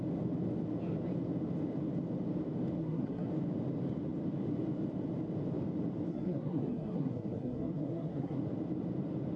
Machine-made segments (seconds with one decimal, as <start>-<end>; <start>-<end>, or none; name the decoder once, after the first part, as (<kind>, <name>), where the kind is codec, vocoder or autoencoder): 2.8-3.3 (codec, SNAC); 6.1-8.4